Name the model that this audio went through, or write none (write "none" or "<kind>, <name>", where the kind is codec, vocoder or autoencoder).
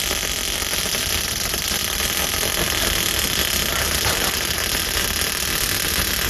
none